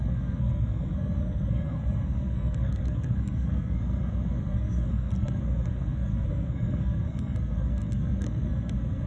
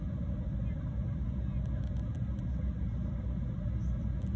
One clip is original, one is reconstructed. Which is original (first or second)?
second